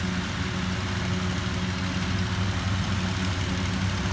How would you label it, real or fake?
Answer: real